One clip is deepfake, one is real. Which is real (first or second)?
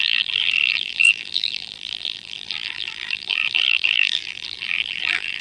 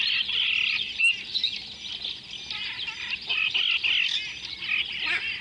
second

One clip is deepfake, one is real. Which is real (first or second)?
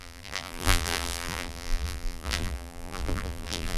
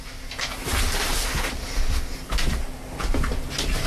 second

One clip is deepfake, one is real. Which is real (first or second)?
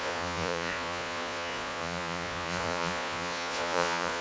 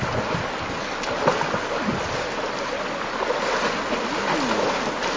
second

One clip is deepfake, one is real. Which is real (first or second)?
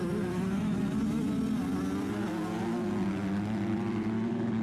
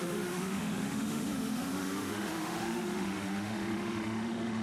first